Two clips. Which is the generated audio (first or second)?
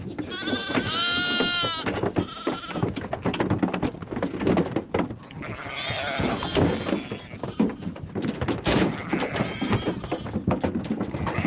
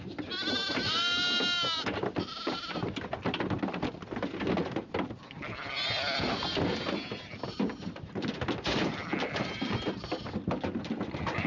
second